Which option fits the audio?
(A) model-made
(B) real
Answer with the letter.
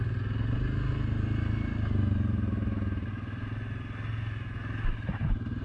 B